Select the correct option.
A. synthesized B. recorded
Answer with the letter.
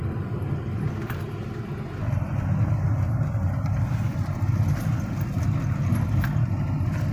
B